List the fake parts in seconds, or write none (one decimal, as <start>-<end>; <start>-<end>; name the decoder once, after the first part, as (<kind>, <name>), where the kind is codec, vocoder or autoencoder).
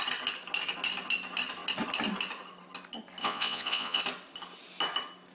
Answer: 3.2-4.0 (vocoder, Vocos)